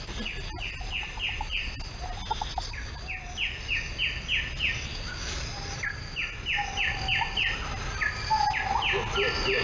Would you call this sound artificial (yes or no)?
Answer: no